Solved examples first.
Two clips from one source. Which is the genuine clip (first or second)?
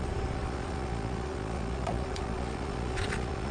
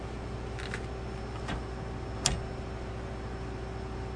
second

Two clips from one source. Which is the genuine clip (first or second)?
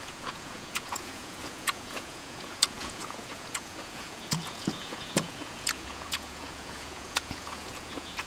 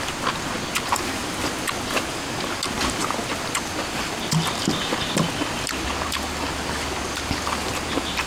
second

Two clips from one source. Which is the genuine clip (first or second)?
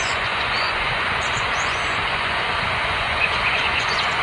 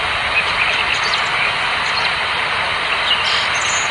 second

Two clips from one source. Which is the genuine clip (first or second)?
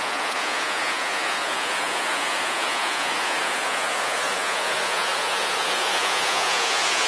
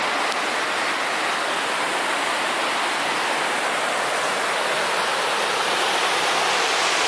second